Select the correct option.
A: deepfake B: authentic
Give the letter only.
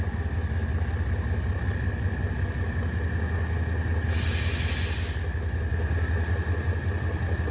B